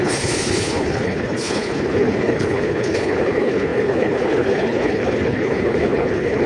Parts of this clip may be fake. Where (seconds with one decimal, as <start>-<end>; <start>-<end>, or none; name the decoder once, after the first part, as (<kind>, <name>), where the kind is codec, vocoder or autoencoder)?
0.0-6.5 (codec, HILCodec)